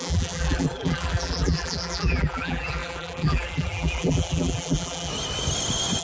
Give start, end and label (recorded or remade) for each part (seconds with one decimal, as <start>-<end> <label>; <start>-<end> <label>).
0.0-5.1 remade; 5.1-6.0 recorded